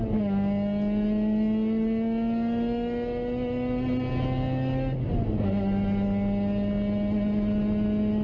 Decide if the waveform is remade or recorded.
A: recorded